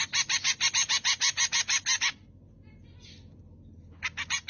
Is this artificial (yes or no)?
no